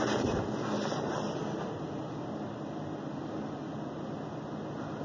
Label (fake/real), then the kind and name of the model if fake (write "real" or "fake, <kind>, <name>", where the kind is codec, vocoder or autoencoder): real